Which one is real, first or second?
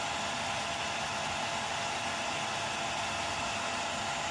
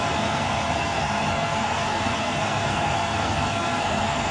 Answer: first